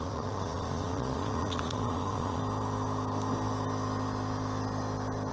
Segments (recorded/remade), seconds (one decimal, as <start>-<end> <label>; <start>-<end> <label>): 0.0-2.4 remade; 2.4-5.3 recorded